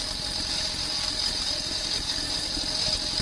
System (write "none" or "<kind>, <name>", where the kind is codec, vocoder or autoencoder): vocoder, BigVGAN v2